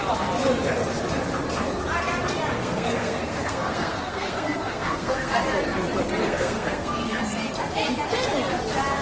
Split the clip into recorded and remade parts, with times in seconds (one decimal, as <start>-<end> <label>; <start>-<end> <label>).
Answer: 0.0-2.6 recorded; 2.6-5.4 remade; 5.4-6.2 recorded; 6.2-7.2 remade; 7.2-9.0 recorded